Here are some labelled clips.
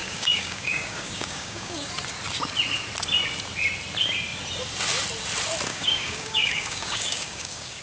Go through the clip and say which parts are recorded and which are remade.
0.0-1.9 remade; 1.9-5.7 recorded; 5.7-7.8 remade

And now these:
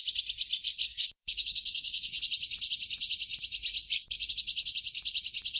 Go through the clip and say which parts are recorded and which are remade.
0.0-0.9 recorded; 0.9-2.2 remade; 2.2-5.6 recorded

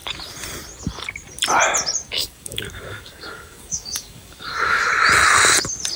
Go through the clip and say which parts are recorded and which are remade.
0.0-2.2 recorded; 2.2-4.9 remade; 4.9-6.0 recorded

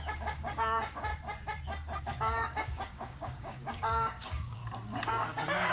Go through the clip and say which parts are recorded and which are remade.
0.0-1.1 remade; 1.1-2.0 recorded; 2.0-4.6 remade; 4.6-5.1 recorded; 5.1-5.7 remade

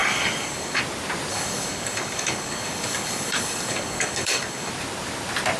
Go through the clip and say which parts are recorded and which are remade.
0.0-0.8 remade; 0.8-1.3 recorded; 1.3-4.7 remade; 4.7-5.6 recorded

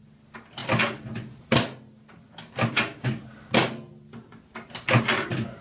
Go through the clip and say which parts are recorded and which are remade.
0.0-5.6 recorded

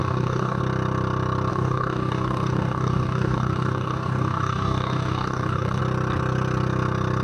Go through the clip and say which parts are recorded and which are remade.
0.0-0.6 remade; 0.6-1.5 recorded; 1.5-5.8 remade; 5.8-7.2 recorded